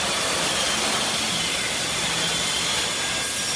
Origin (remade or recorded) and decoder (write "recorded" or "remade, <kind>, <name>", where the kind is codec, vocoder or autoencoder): recorded